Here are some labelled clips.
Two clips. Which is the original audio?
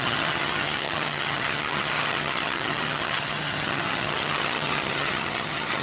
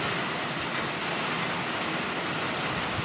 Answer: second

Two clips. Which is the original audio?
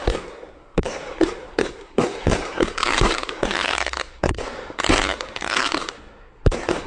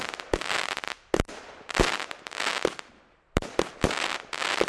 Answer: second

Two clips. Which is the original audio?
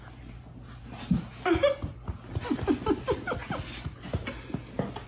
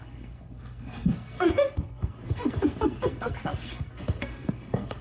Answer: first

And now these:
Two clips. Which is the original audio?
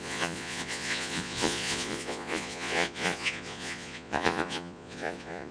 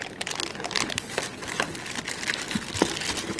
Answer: second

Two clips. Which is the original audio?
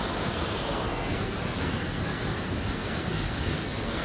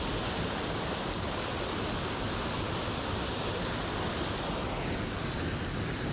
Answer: second